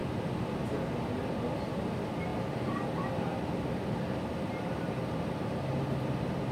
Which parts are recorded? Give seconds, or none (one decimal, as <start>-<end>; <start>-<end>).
0.0-2.3